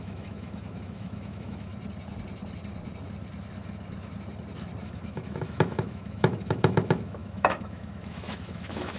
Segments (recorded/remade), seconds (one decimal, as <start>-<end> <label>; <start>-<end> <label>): 0.0-1.7 remade; 1.7-4.8 recorded; 4.8-9.0 remade